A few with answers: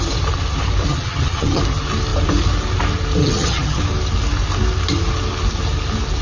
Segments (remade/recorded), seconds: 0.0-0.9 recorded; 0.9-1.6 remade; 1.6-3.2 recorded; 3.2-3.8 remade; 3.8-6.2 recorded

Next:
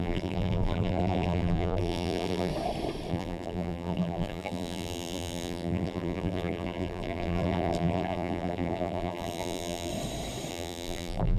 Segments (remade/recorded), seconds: 0.0-2.5 remade; 2.5-3.1 recorded; 3.1-9.9 remade; 9.9-10.5 recorded; 10.5-11.4 remade

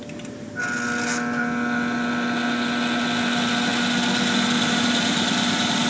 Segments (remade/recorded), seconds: 0.0-5.9 recorded

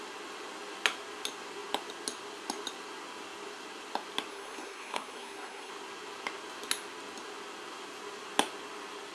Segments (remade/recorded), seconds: 0.0-4.3 recorded; 4.3-5.7 remade; 5.7-9.1 recorded

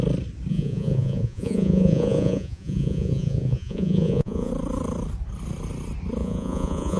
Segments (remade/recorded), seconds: 0.0-0.5 recorded; 0.5-4.5 remade; 4.5-6.2 recorded; 6.2-7.0 remade

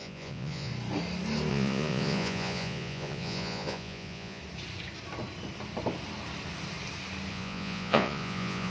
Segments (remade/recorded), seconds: 0.0-0.7 remade; 0.7-1.5 recorded; 1.5-4.4 remade; 4.4-7.3 recorded; 7.3-8.7 remade